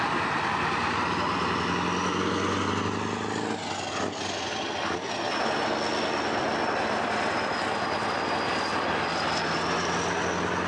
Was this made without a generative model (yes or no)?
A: yes